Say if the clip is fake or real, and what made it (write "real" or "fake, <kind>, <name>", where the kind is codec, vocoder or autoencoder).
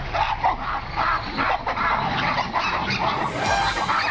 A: real